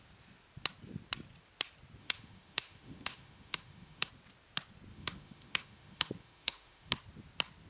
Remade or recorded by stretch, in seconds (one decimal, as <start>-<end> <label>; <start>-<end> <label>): 0.0-2.0 recorded; 2.0-4.1 remade; 4.1-4.9 recorded; 4.9-6.9 remade; 6.9-7.7 recorded